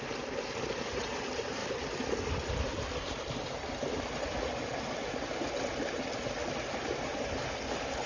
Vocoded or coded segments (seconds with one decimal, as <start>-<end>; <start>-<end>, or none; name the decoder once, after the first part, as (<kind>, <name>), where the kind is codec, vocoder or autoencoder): none